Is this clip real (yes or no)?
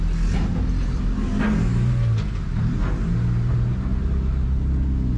yes